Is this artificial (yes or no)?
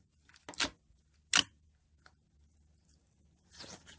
no